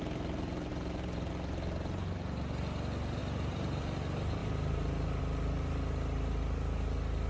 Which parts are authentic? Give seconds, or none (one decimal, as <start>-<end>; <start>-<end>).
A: 0.0-0.7; 1.3-3.2; 3.8-4.4; 5.2-7.3